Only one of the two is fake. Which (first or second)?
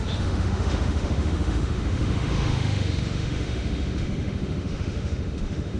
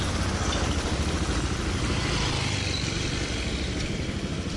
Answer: first